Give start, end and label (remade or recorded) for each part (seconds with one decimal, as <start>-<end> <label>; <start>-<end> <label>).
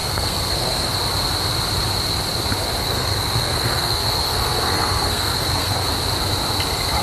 0.0-0.9 remade; 0.9-2.8 recorded; 2.8-5.9 remade; 5.9-7.0 recorded